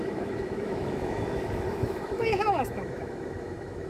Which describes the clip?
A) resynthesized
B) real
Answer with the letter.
A